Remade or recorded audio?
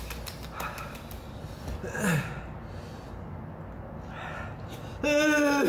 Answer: recorded